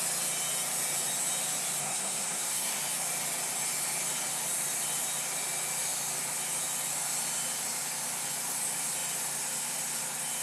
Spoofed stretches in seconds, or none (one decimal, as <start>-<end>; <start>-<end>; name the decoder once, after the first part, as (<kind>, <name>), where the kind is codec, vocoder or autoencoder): 1.8-2.8 (codec, SNAC)